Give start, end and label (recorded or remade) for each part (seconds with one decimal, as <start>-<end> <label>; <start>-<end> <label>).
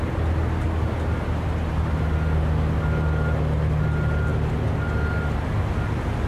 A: 0.0-6.3 recorded